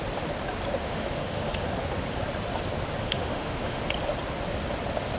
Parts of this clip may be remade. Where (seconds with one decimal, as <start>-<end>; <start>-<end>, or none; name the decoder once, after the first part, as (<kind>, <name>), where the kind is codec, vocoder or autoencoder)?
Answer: 0.8-1.6 (autoencoder, DAC-VAE); 3.0-3.8